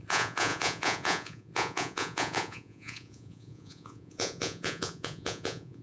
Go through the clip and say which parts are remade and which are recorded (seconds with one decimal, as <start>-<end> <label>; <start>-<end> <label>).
0.0-5.8 remade